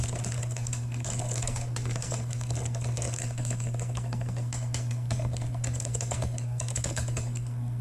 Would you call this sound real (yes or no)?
no